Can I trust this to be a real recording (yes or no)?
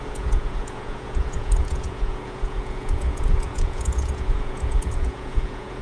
no